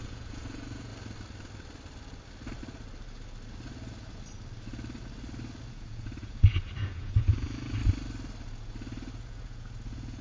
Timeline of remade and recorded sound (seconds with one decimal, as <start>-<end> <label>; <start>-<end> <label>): 0.0-0.9 remade; 0.9-5.7 recorded; 5.7-7.8 remade; 7.8-9.1 recorded; 9.1-10.2 remade